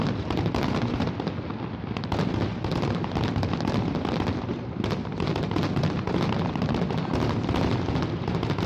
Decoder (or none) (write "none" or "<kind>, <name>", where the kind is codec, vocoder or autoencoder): none